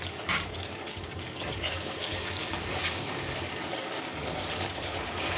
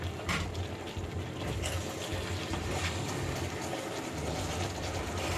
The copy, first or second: first